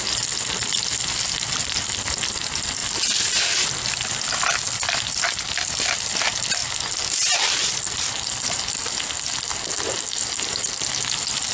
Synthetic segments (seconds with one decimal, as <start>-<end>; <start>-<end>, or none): none